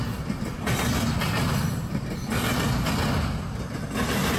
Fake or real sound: real